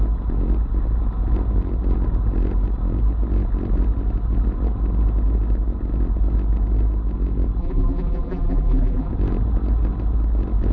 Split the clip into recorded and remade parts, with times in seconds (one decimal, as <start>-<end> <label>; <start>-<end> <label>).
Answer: 0.0-7.6 recorded; 7.6-9.1 remade; 9.1-10.7 recorded

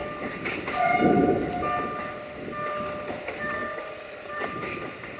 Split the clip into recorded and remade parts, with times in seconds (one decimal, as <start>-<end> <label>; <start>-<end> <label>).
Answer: 0.0-3.1 recorded; 3.1-3.6 remade; 3.6-4.2 recorded; 4.2-5.2 remade

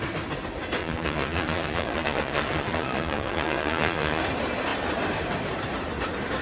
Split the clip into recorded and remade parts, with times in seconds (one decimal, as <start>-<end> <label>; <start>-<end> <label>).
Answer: 0.0-0.8 recorded; 0.8-4.2 remade; 4.2-6.4 recorded

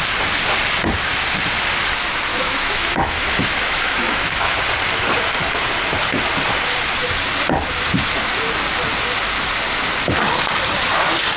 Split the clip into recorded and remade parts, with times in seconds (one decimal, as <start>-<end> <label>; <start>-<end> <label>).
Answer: 0.0-2.3 recorded; 2.3-4.6 remade; 4.6-11.4 recorded